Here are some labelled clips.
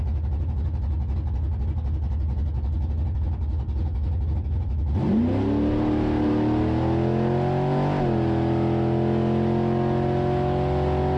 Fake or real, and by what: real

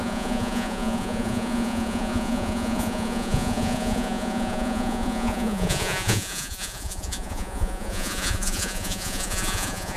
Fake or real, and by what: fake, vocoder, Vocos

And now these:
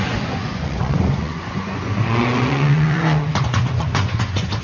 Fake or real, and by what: fake, vocoder, Vocos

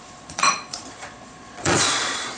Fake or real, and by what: fake, vocoder, Vocos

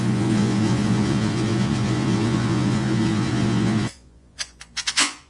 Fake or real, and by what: fake, vocoder, Vocos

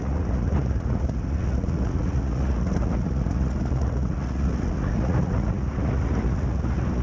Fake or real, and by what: fake, vocoder, Vocos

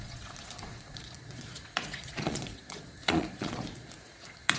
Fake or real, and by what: fake, vocoder, Vocos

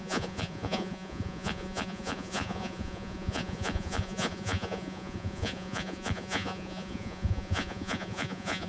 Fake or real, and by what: fake, vocoder, Vocos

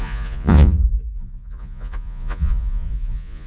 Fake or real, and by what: fake, vocoder, Vocos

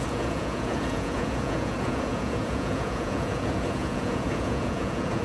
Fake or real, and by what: fake, vocoder, Vocos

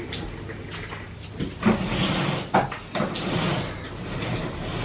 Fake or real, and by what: real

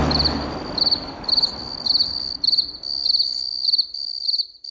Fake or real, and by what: real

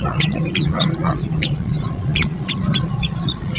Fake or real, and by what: fake, vocoder, Vocos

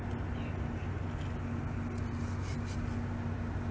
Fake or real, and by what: real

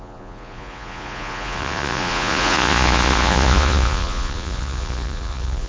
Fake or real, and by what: fake, vocoder, Vocos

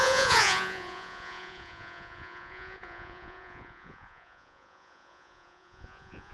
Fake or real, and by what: fake, vocoder, Vocos